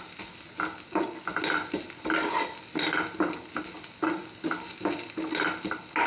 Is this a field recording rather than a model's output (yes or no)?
yes